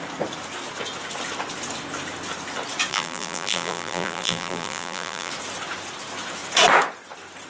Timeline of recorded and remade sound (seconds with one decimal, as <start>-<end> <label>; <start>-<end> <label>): 0.0-2.9 recorded; 2.9-5.3 remade; 5.3-7.5 recorded